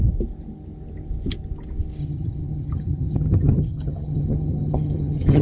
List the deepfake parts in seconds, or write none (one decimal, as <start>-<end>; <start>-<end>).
2.0-5.4